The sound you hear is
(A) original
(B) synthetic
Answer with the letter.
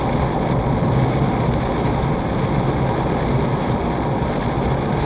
A